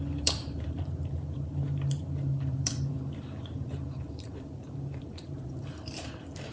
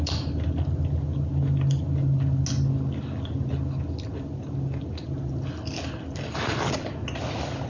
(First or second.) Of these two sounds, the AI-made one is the first